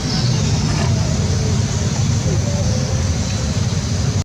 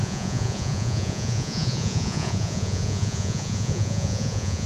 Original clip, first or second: first